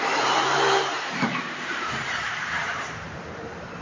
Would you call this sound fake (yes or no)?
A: yes